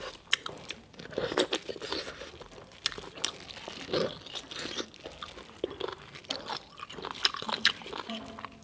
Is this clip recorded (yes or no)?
yes